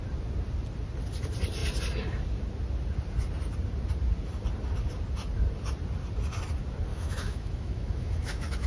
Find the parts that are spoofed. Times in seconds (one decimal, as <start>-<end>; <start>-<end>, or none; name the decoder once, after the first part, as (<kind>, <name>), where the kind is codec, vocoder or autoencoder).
6.9-8.7 (autoencoder, DAC-VAE)